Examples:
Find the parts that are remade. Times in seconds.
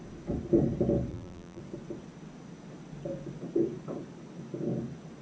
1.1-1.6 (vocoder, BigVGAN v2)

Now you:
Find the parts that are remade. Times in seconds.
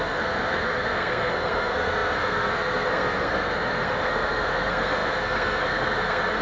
0.0-6.4 (codec, SNAC)